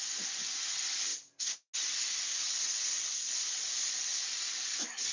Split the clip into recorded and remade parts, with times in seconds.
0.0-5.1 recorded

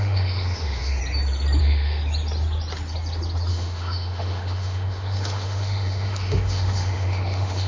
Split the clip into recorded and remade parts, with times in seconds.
0.0-1.0 remade; 1.0-1.6 recorded; 1.6-2.0 remade; 2.0-3.5 recorded; 3.5-7.7 remade

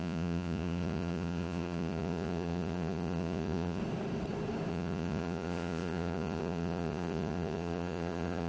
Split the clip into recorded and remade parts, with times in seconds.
0.0-3.8 remade; 3.8-4.7 recorded; 4.7-8.5 remade

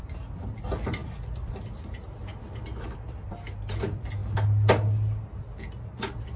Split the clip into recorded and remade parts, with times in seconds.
0.0-6.4 recorded

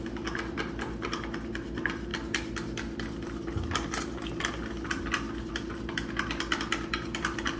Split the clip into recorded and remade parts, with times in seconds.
0.0-7.6 recorded

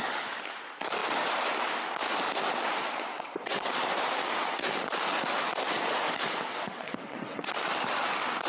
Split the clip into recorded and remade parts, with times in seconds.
0.0-3.1 recorded; 3.1-3.7 remade; 3.7-6.5 recorded; 6.5-7.5 remade; 7.5-8.5 recorded

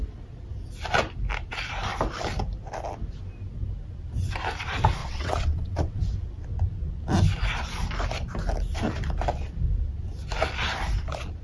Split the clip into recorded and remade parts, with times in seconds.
0.0-5.0 recorded; 5.0-6.0 remade; 6.0-11.4 recorded